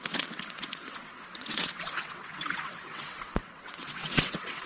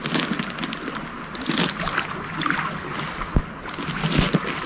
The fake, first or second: first